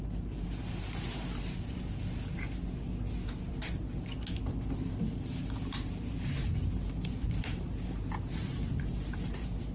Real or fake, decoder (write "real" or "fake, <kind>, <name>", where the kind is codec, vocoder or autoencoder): fake, vocoder, BigVGAN v2